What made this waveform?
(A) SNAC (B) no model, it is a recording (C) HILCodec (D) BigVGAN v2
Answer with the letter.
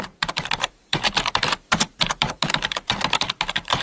D